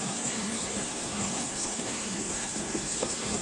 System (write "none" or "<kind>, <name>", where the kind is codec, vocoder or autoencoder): codec, SNAC